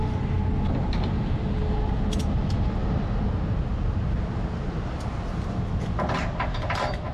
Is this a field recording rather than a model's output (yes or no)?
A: yes